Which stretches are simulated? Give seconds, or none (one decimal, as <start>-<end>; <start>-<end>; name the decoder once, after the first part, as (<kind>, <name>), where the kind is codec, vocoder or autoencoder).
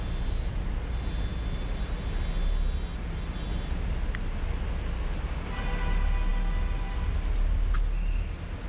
none